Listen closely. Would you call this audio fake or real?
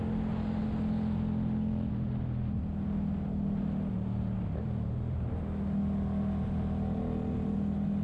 real